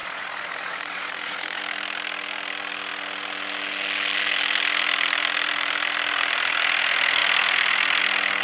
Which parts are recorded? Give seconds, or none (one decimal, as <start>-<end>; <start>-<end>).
1.6-8.4

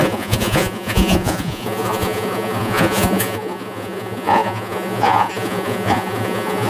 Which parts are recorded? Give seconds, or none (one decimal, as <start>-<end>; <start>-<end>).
none

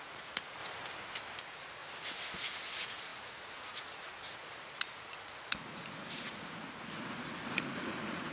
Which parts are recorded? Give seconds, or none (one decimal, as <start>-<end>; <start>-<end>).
0.6-1.4; 1.8-2.4